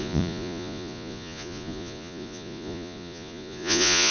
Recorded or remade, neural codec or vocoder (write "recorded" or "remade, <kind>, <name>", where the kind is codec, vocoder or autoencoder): remade, vocoder, Vocos